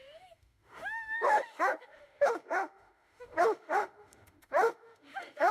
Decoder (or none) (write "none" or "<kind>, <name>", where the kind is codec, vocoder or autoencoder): autoencoder, DAC-VAE